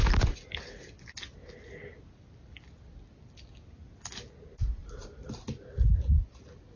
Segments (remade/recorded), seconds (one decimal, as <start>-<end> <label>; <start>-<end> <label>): 0.0-4.8 recorded; 4.8-5.4 remade; 5.4-6.8 recorded